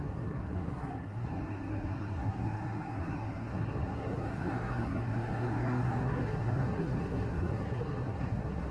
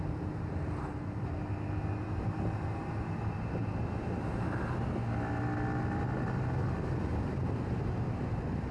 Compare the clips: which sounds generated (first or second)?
first